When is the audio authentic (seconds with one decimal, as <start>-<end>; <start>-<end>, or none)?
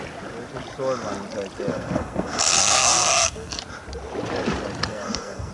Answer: 0.0-1.7; 3.6-4.9